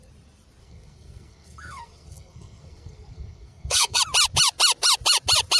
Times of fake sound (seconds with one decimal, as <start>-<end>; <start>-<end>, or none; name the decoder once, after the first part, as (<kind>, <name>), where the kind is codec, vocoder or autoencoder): 0.6-4.0 (codec, SNAC)